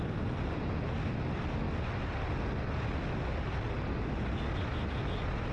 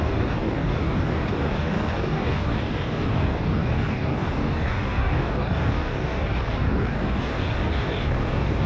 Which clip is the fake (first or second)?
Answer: second